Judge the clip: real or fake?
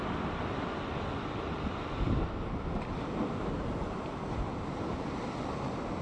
real